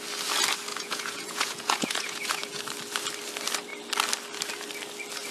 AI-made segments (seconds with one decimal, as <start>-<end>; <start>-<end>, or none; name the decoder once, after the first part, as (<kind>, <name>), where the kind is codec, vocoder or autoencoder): 0.7-2.6 (vocoder, Vocos)